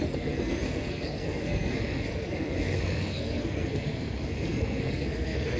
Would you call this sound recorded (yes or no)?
no